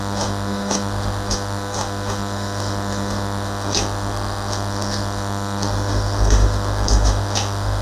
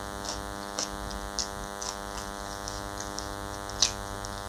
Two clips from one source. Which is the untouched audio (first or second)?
second